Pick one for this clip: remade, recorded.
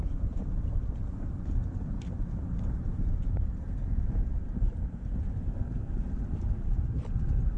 remade